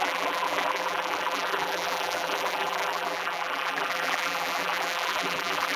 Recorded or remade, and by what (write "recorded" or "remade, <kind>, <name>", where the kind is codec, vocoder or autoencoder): remade, vocoder, BigVGAN v2